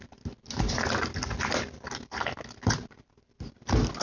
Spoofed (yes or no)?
no